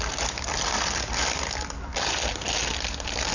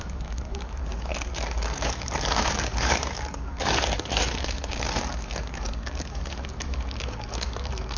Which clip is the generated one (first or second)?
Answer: second